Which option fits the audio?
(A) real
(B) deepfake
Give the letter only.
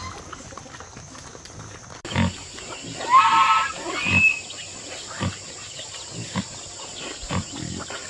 A